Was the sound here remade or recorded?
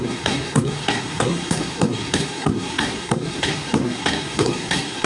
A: remade